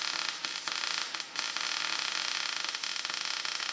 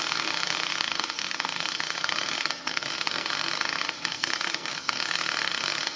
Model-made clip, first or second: second